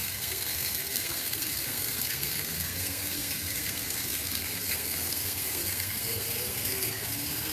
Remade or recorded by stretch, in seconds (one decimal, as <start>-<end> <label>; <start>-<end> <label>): 0.0-7.5 remade